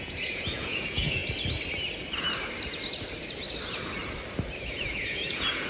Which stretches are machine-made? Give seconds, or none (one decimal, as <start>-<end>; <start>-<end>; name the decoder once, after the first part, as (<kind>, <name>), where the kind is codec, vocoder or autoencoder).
0.0-1.2 (vocoder, Vocos); 4.6-5.7